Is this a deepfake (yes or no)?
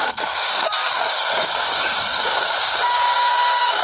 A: yes